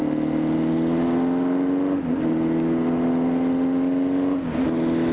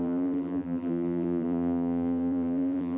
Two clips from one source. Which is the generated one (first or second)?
second